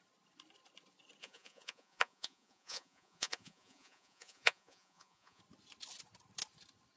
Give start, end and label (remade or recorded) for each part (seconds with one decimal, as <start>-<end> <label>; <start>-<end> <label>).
0.0-1.2 recorded; 1.2-5.4 remade; 5.4-7.0 recorded